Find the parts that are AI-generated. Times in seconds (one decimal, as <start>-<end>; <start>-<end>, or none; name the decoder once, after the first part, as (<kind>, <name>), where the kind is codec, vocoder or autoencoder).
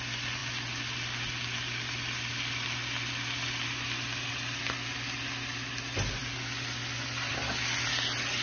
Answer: none